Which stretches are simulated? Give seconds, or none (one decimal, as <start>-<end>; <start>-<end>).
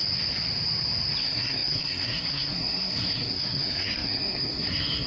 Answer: 1.2-5.1